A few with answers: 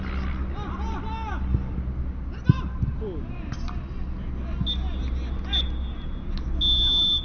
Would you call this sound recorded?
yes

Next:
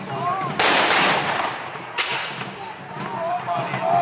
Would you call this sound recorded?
yes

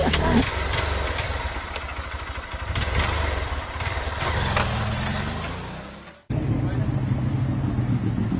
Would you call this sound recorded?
yes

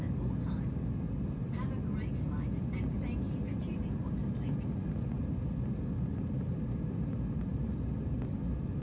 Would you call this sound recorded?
yes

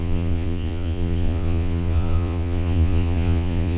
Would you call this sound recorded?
no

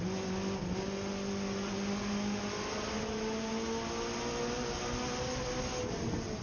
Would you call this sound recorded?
yes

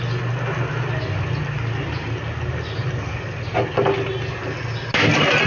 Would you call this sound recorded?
yes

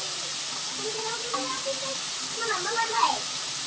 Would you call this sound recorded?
yes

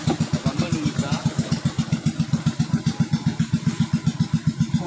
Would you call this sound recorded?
yes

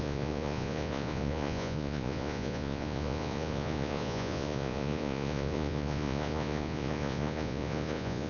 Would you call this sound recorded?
no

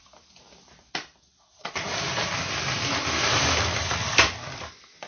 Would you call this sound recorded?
yes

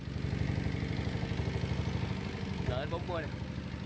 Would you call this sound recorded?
yes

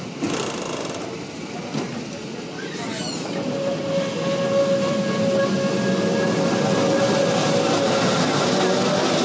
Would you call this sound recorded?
yes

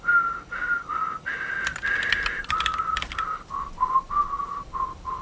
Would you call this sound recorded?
yes